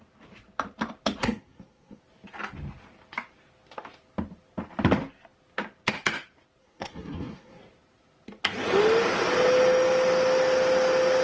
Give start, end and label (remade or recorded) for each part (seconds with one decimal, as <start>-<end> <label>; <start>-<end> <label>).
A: 0.0-1.2 recorded; 1.2-2.0 remade; 2.0-6.6 recorded; 6.6-7.6 remade; 7.6-11.2 recorded